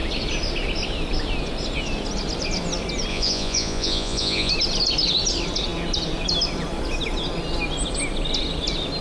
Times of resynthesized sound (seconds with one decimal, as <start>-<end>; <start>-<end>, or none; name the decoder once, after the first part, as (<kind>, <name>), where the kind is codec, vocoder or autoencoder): 3.1-4.5 (vocoder, Vocos)